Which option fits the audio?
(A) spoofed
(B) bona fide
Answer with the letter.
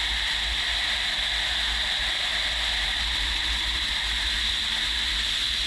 B